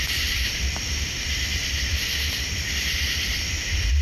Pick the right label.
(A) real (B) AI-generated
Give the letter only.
B